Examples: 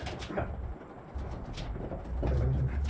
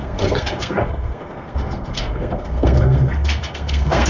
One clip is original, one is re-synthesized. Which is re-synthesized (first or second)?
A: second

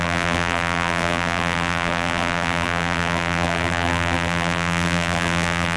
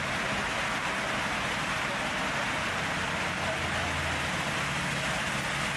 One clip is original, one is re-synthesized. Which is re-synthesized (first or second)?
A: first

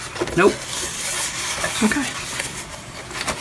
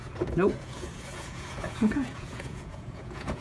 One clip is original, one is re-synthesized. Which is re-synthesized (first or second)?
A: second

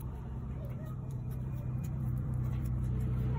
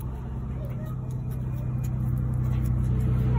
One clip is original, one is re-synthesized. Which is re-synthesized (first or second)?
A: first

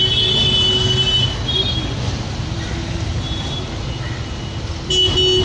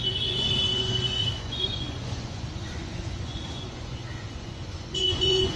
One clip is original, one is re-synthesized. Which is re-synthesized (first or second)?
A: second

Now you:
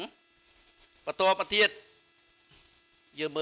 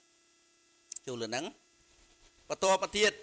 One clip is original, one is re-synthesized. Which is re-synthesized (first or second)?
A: second